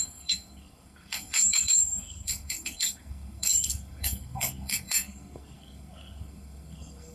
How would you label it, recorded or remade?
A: remade